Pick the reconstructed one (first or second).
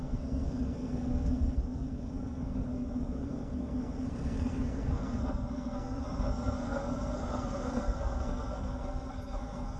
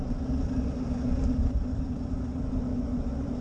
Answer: first